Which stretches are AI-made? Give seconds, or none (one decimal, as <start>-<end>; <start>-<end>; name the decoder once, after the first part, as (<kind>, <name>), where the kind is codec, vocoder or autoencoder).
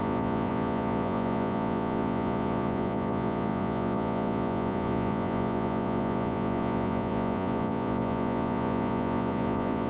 0.0-9.9 (vocoder, Vocos)